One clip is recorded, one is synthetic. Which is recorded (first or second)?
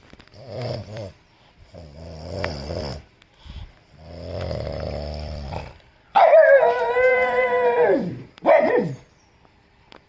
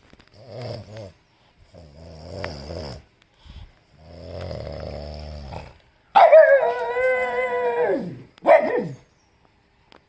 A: second